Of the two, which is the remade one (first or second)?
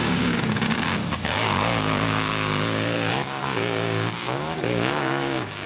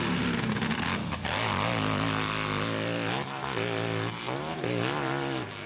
first